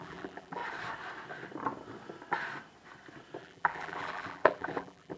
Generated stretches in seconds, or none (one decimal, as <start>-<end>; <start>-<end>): 0.0-0.6; 3.4-5.2